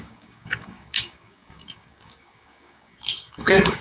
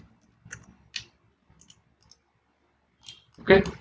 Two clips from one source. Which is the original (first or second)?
second